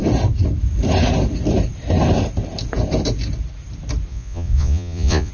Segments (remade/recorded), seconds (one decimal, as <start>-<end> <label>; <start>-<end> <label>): 0.0-4.1 recorded; 4.1-5.3 remade